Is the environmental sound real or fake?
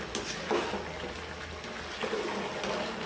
real